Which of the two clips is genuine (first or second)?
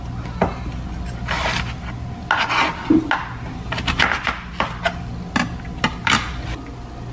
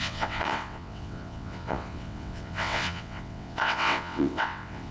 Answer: first